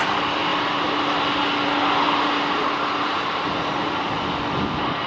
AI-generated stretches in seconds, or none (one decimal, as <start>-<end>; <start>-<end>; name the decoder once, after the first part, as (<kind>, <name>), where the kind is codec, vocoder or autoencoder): none